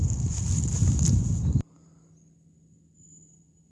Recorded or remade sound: remade